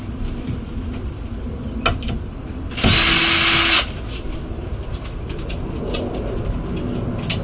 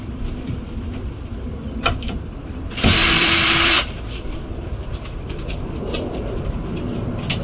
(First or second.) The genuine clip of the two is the first